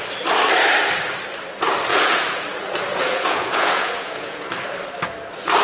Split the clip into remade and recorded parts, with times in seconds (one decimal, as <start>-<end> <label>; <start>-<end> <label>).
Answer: 0.0-1.9 recorded; 1.9-4.5 remade; 4.5-5.6 recorded